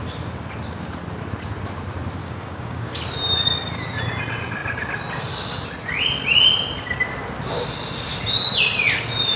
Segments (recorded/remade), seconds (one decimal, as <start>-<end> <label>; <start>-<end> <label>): 0.0-2.2 recorded; 2.2-3.0 remade; 3.0-9.4 recorded